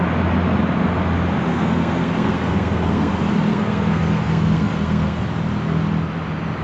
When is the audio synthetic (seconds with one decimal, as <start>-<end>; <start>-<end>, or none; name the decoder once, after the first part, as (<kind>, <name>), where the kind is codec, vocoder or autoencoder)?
1.5-3.1 (codec, SNAC); 3.5-5.2